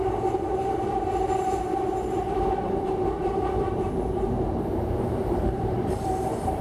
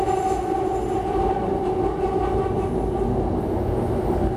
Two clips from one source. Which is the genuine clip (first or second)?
second